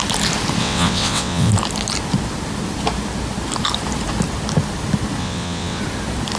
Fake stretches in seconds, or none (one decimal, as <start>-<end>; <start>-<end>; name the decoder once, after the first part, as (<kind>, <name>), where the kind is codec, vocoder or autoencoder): 0.6-1.5 (vocoder, WaveNeXt); 5.2-5.8